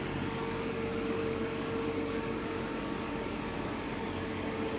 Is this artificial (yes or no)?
yes